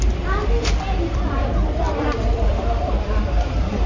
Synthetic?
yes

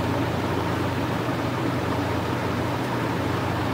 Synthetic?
yes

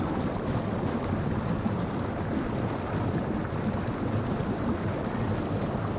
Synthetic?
no